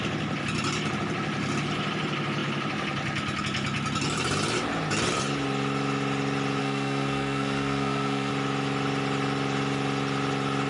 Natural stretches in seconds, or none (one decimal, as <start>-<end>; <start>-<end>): 0.0-6.6; 8.3-10.7